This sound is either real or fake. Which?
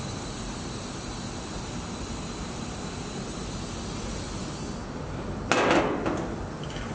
real